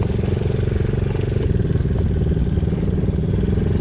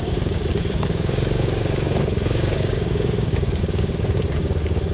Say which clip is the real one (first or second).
first